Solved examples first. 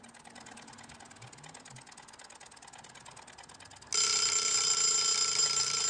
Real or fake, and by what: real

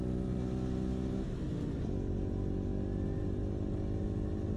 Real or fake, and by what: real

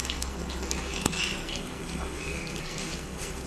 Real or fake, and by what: fake, codec, SNAC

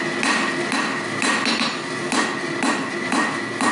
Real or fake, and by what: real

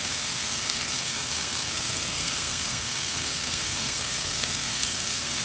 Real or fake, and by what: fake, codec, SNAC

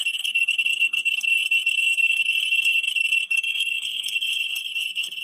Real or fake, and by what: fake, codec, SNAC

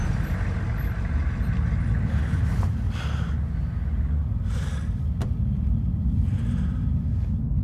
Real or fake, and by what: real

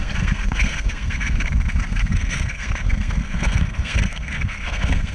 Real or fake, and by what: fake, codec, SNAC